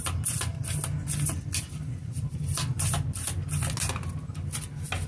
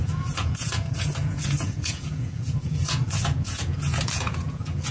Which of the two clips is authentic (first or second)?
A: first